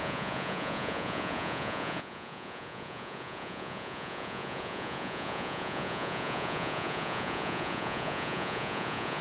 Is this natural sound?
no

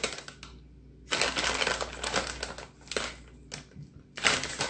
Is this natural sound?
yes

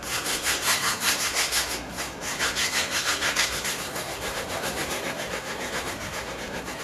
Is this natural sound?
no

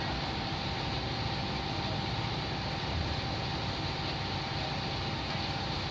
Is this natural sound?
yes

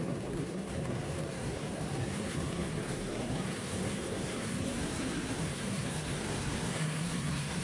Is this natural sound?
no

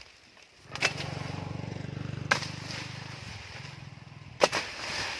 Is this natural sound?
yes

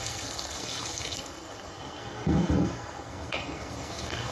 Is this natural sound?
no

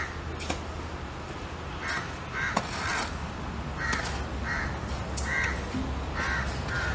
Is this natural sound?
yes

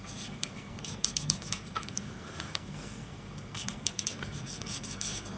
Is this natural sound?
no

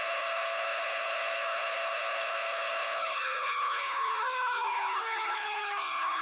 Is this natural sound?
no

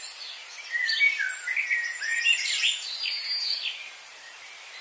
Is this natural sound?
yes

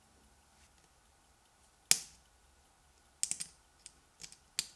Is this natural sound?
yes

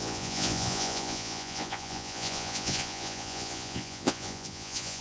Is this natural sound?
no